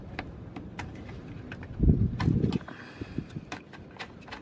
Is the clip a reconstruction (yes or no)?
yes